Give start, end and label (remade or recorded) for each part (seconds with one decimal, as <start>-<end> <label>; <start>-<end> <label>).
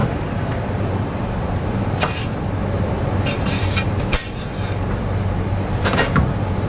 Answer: 0.0-6.7 recorded